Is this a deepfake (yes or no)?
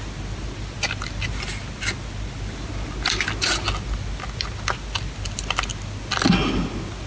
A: no